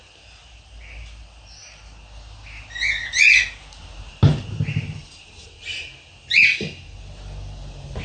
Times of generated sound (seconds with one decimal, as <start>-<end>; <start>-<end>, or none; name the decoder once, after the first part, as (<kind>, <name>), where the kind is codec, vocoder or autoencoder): none